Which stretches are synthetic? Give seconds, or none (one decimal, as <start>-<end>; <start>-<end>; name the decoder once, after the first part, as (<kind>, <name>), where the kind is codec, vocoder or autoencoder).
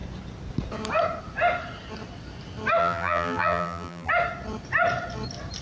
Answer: 2.8-4.1 (vocoder, BigVGAN v2)